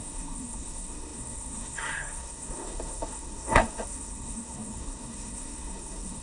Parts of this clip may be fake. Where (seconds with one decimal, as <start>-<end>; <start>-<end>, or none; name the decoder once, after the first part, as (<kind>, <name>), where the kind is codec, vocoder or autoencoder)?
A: 0.0-6.2 (codec, SNAC)